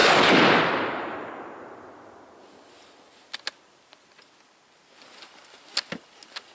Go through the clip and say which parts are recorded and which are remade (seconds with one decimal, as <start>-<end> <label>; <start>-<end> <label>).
0.0-6.5 recorded